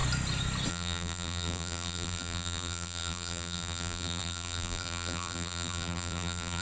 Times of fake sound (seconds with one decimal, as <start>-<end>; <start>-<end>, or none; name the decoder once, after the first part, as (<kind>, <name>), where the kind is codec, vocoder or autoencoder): 0.7-6.6 (vocoder, BigVGAN v2)